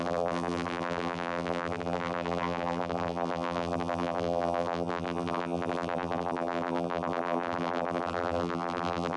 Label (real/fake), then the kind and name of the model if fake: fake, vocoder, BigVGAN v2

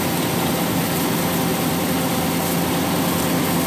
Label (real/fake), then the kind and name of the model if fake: real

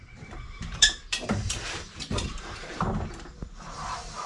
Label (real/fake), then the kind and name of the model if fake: fake, vocoder, BigVGAN v2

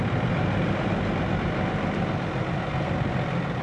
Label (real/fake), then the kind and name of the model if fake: real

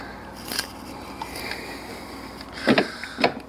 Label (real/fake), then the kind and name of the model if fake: real